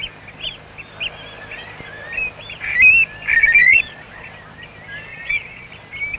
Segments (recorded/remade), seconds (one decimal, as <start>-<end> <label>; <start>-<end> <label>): 0.0-3.6 recorded; 3.6-4.3 remade; 4.3-5.1 recorded; 5.1-5.7 remade; 5.7-6.2 recorded